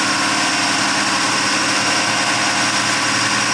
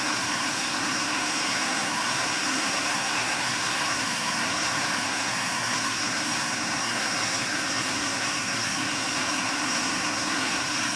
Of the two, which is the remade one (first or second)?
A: second